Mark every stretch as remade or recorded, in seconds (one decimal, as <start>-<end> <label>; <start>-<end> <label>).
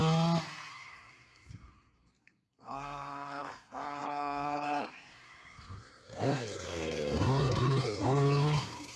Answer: 0.0-0.7 recorded; 0.7-9.0 remade